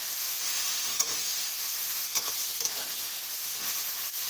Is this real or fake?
fake